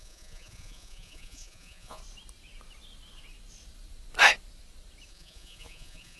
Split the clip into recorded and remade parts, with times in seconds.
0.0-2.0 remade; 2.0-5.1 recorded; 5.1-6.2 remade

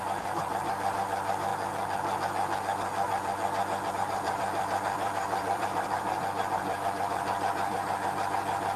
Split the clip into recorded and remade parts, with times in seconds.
0.0-1.5 remade; 1.5-3.9 recorded; 3.9-8.8 remade

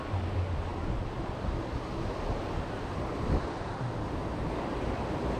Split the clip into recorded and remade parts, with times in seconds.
0.0-5.4 recorded

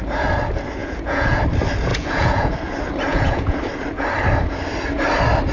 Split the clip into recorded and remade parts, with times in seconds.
0.0-0.8 recorded; 0.8-1.4 remade; 1.4-1.9 recorded; 1.9-2.5 remade; 2.5-3.1 recorded; 3.1-3.6 remade; 3.6-5.5 recorded

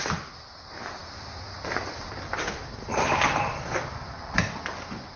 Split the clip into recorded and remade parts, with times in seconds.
0.0-5.2 recorded

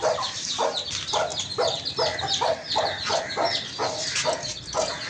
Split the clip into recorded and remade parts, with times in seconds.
0.0-5.1 recorded

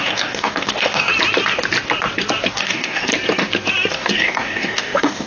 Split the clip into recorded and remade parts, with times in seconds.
0.0-1.1 remade; 1.1-2.5 recorded; 2.5-3.1 remade; 3.1-3.9 recorded; 3.9-5.3 remade

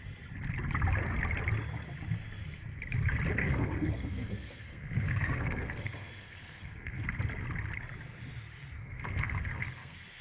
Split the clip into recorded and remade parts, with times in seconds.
0.0-3.4 recorded; 3.4-7.2 remade; 7.2-8.8 recorded; 8.8-10.2 remade